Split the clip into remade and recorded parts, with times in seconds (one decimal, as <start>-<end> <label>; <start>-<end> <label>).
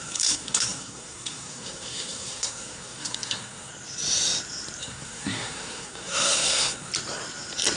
0.0-3.7 remade; 3.7-4.8 recorded; 4.8-6.9 remade; 6.9-7.8 recorded